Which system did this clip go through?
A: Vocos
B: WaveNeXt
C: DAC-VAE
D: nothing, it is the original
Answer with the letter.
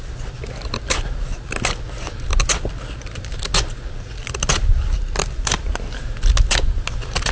D